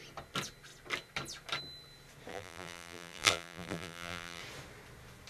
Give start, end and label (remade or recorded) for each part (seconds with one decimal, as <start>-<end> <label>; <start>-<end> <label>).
0.0-2.3 recorded; 2.3-4.4 remade; 4.4-5.3 recorded